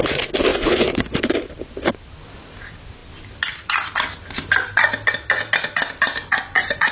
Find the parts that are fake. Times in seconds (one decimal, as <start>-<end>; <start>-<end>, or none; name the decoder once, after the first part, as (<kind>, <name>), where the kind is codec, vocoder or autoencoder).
0.5-1.3 (vocoder, Vocos); 6.2-6.9